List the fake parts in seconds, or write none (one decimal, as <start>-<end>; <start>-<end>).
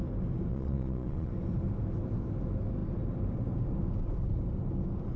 0.5-1.3